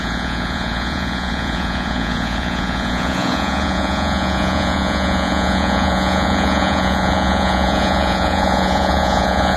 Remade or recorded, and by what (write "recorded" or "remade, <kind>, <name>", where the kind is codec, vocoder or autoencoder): remade, vocoder, Vocos